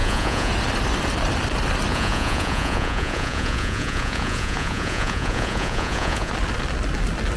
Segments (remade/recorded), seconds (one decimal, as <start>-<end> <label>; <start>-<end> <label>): 0.0-0.5 remade; 0.5-1.9 recorded; 1.9-6.3 remade; 6.3-7.4 recorded